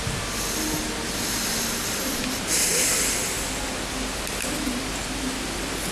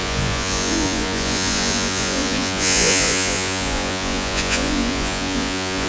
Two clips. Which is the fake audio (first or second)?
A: second